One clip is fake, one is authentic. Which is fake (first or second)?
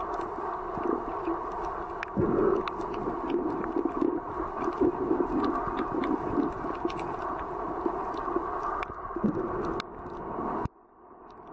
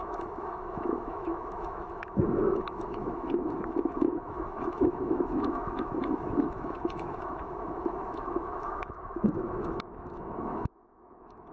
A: second